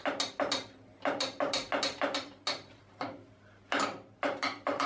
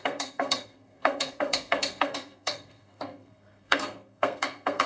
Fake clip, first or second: second